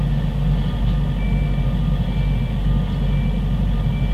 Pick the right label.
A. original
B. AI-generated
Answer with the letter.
A